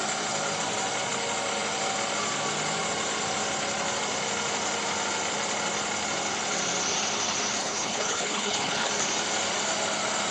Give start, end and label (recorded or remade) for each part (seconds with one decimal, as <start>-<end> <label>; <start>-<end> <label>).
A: 0.0-7.6 recorded; 7.6-8.9 remade; 8.9-10.3 recorded

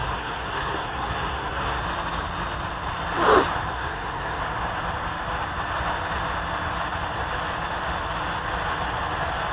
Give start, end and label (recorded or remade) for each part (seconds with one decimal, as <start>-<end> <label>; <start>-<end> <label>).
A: 0.0-1.8 remade; 1.8-3.7 recorded; 3.7-4.4 remade; 4.4-9.5 recorded

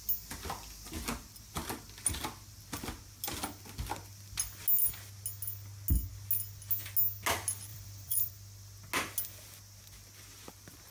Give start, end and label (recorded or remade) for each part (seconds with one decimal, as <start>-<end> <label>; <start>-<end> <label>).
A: 0.0-7.7 recorded; 7.7-8.3 remade; 8.3-10.9 recorded

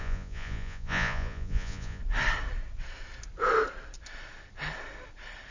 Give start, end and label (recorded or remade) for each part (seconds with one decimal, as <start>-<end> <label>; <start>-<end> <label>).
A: 0.0-2.0 remade; 2.0-5.5 recorded

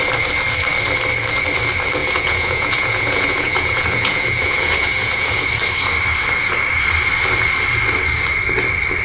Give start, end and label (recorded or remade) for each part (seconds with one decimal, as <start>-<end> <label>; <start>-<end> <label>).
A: 0.0-2.0 recorded; 2.0-5.5 remade; 5.5-9.0 recorded

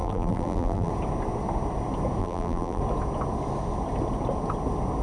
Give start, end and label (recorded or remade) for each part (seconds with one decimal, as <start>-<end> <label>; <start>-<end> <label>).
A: 0.0-0.9 remade; 0.9-2.2 recorded; 2.2-2.8 remade; 2.8-5.0 recorded